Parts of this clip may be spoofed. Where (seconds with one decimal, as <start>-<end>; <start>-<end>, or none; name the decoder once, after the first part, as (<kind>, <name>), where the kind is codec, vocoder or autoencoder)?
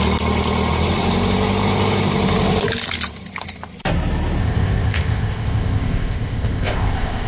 4.4-7.3 (codec, ZipCodec)